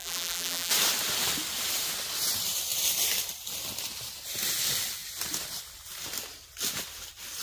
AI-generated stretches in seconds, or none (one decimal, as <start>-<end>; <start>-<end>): 0.0-0.7